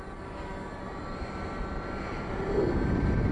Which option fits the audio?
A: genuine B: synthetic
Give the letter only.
A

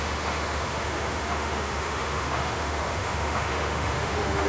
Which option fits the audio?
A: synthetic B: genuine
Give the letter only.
A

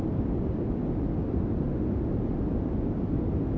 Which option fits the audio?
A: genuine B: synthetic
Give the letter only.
A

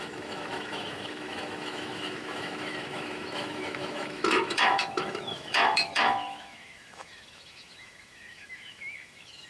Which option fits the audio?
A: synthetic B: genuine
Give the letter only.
A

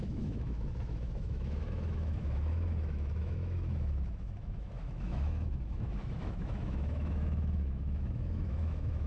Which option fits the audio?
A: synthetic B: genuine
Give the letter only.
A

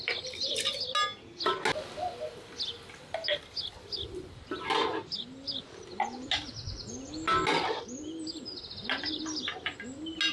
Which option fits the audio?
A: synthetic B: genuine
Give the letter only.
B